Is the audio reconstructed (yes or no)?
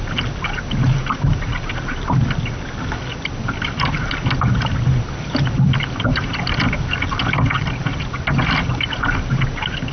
no